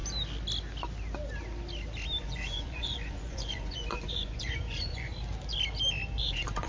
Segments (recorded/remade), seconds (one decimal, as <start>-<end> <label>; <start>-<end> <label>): 0.0-2.2 recorded; 2.2-5.1 remade; 5.1-6.2 recorded; 6.2-6.7 remade